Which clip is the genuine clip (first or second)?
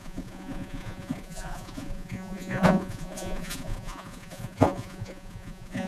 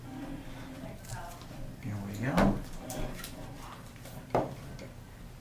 second